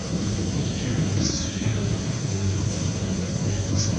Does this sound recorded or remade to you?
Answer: remade